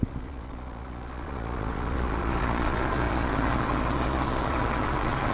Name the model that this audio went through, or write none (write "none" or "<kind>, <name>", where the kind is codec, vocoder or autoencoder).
vocoder, Vocos